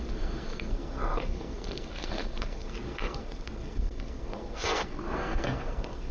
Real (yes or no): no